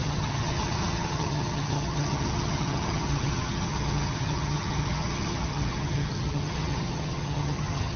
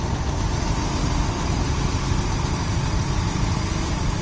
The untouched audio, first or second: second